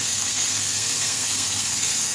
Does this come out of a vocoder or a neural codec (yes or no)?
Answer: yes